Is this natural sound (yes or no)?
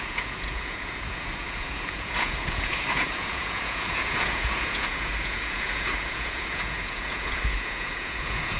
no